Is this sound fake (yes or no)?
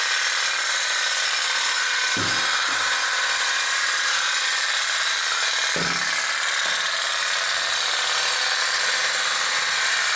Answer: no